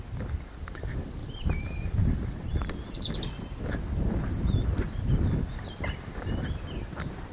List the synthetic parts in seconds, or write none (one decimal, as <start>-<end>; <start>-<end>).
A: 1.2-3.6